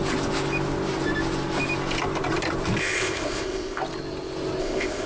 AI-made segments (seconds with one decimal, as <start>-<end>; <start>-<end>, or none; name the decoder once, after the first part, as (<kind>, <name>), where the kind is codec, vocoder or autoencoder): 2.8-3.8 (codec, ZipCodec); 4.6-5.1